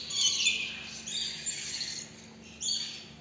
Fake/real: real